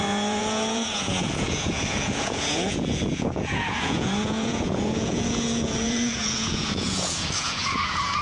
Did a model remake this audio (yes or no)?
yes